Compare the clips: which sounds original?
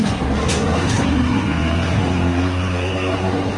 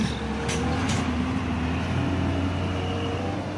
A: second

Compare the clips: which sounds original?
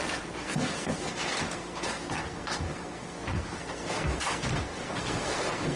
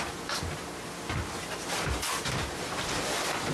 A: second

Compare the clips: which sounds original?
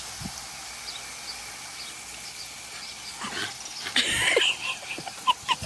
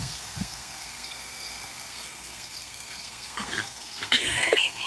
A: first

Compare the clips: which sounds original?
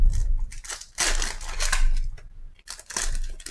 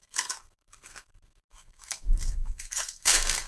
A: first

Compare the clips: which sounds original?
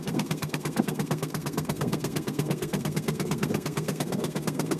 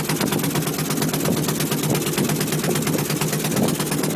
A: second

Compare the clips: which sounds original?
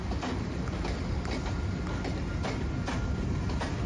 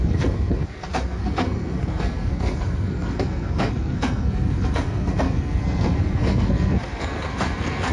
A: first